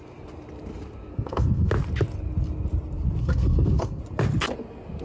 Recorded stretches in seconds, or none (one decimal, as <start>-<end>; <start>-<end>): 0.0-1.1; 1.7-3.2; 4.0-5.0